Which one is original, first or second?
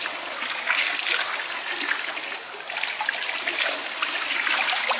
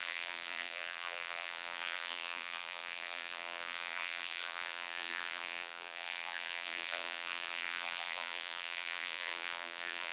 first